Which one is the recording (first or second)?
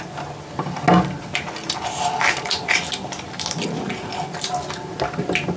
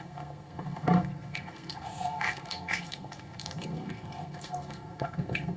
first